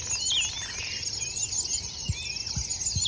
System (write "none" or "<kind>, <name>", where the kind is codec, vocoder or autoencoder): none